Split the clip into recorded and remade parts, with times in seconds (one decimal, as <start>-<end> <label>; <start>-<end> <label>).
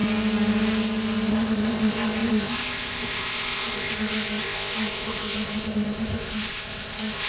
0.0-1.3 recorded; 1.3-7.3 remade